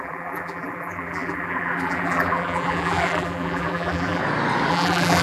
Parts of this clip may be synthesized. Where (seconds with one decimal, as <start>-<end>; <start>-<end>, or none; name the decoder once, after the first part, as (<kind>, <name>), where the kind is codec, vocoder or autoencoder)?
0.0-4.2 (vocoder, BigVGAN v2); 4.7-5.2